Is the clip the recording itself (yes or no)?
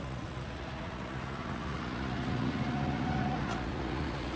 no